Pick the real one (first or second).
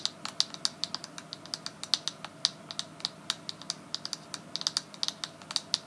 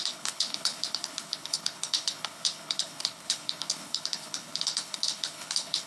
first